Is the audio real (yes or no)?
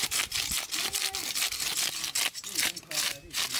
yes